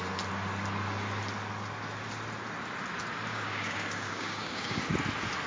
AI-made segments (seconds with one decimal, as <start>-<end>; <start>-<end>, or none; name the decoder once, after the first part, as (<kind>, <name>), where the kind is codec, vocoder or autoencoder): 3.3-4.8 (codec, DAC)